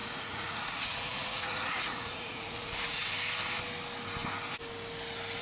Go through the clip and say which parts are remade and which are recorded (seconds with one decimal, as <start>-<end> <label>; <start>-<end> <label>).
0.0-3.0 remade; 3.0-5.4 recorded